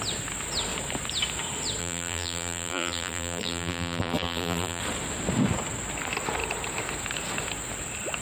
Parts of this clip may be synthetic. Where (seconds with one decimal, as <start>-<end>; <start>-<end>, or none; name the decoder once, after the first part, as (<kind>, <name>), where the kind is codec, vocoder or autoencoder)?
1.8-4.8 (vocoder, BigVGAN v2)